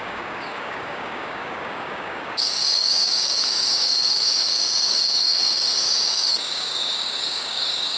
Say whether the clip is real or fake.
fake